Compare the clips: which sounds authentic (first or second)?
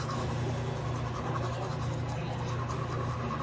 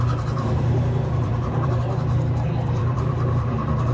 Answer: first